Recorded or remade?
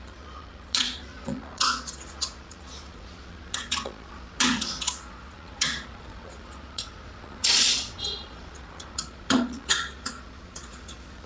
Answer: remade